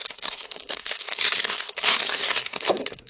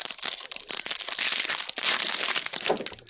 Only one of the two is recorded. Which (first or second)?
second